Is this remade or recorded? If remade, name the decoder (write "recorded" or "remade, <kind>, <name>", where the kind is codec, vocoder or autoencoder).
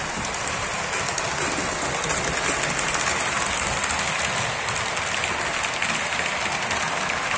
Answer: recorded